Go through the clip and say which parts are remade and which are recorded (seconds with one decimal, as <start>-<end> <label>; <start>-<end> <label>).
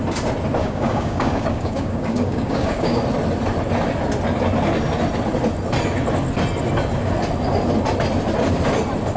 0.0-0.6 recorded; 0.6-3.0 remade; 3.0-9.2 recorded